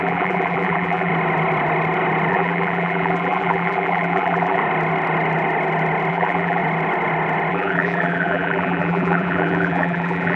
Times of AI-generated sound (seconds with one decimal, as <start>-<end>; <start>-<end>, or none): 0.0-1.1; 2.3-4.6; 6.1-6.6; 7.5-10.4